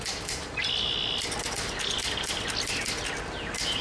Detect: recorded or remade recorded